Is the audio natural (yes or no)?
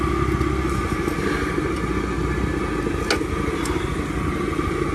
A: yes